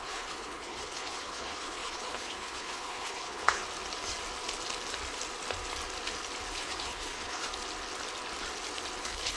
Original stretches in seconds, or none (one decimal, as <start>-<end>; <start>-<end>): 3.6-6.5; 7.5-9.0